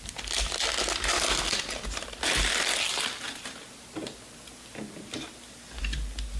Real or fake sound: real